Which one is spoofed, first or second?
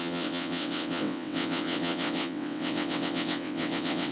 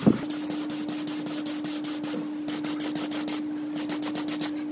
first